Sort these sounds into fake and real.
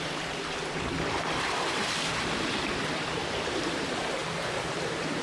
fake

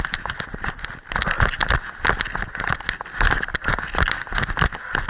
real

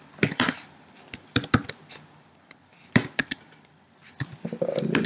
fake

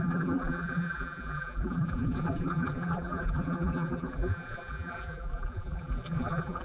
fake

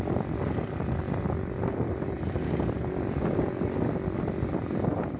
real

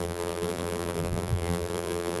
fake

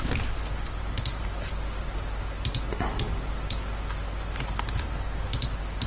real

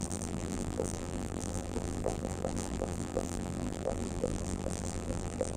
fake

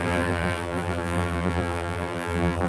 fake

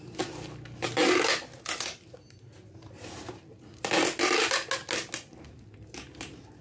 real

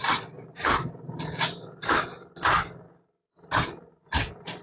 real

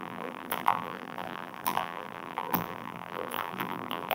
fake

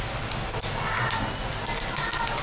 real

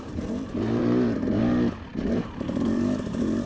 fake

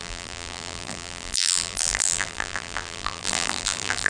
fake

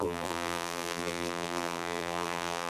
fake